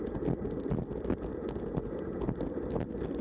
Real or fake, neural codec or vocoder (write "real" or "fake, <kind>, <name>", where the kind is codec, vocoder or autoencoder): real